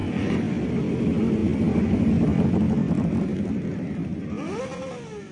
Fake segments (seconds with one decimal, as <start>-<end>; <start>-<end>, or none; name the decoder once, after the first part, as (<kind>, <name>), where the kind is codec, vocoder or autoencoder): none